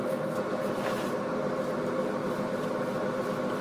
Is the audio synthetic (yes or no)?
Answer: yes